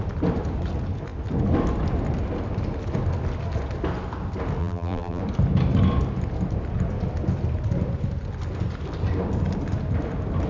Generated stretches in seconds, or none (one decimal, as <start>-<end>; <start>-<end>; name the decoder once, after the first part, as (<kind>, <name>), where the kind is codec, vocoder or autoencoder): 4.6-5.2 (vocoder, BigVGAN v2)